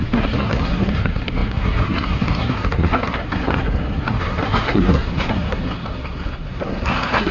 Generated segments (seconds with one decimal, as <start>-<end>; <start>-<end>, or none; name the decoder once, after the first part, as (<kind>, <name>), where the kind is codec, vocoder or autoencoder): 0.0-7.3 (codec, SNAC)